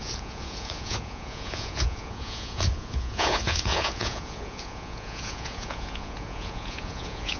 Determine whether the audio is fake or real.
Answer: fake